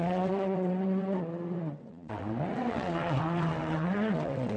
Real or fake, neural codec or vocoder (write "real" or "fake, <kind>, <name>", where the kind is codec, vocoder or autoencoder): fake, vocoder, WaveNeXt